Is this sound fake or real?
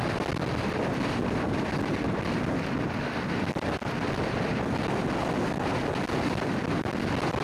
real